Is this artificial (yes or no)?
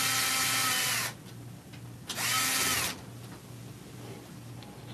no